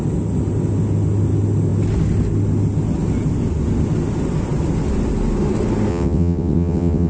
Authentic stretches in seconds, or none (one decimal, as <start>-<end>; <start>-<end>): 0.0-5.9

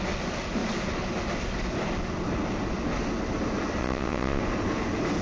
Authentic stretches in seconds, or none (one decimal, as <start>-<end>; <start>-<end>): 0.0-3.8; 4.4-5.2

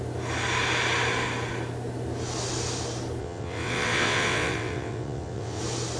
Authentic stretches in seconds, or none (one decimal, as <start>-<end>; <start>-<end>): 0.0-3.2; 5.6-6.0

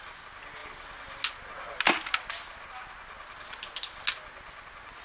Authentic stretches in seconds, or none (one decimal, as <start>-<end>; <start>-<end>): 0.0-5.0

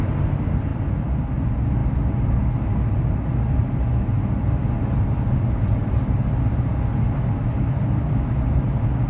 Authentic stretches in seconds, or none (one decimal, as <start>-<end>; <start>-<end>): 0.0-9.1

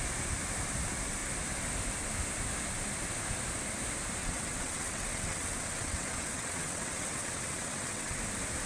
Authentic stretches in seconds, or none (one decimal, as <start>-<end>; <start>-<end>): 0.0-4.2; 8.2-8.7